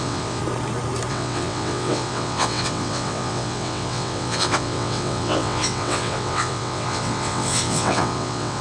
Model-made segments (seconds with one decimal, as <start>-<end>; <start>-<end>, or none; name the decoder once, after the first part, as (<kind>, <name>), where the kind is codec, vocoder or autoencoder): 0.0-0.4 (vocoder, WaveNeXt); 1.1-8.6